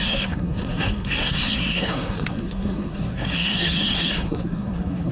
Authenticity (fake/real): fake